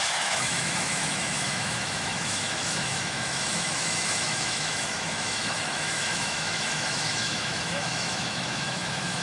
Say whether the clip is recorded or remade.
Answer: remade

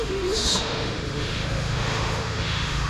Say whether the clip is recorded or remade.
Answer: remade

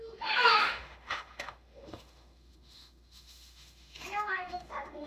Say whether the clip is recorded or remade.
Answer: remade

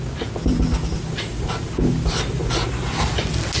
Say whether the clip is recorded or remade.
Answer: recorded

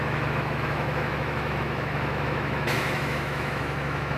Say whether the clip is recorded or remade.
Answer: remade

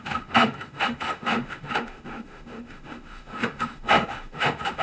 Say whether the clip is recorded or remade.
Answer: remade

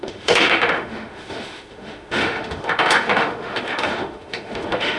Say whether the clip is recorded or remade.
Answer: remade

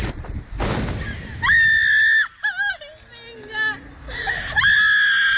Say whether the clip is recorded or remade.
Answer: recorded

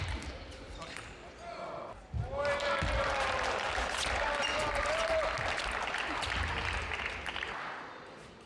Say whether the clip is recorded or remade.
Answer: recorded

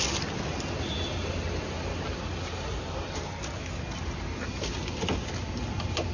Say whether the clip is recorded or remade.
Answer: recorded